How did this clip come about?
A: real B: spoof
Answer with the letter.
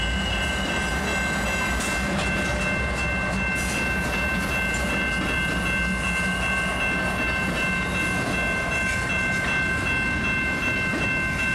A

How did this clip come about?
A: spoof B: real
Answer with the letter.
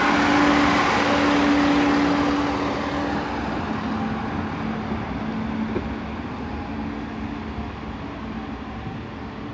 B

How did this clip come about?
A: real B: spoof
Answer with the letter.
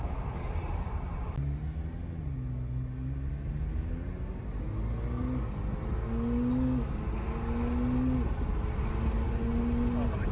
A